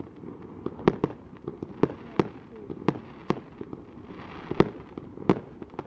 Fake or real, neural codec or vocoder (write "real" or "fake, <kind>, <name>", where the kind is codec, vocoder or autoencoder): real